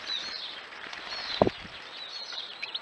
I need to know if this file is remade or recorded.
recorded